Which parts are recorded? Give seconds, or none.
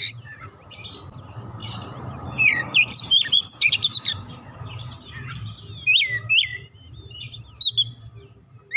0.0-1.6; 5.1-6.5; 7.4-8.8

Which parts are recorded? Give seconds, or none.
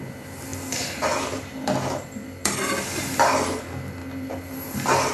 0.0-0.5; 3.6-4.0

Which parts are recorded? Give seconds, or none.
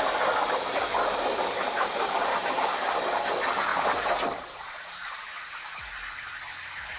0.0-1.6; 2.8-3.7; 5.2-7.0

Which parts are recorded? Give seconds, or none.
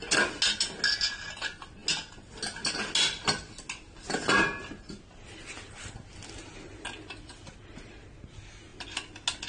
0.0-9.5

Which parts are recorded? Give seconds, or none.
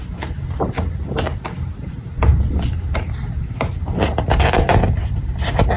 0.0-1.3; 1.9-2.3; 3.5-5.8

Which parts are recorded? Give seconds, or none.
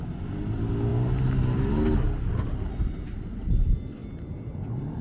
0.0-5.0